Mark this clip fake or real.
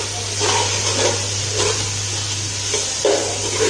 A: real